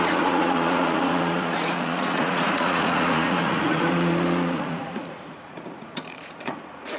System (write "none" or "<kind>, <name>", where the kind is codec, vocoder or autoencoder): vocoder, Vocos